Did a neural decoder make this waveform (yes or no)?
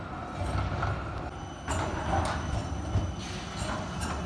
no